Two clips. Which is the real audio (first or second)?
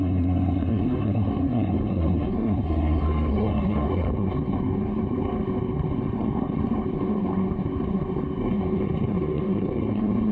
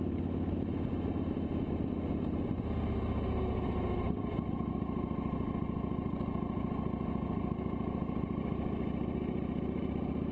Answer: second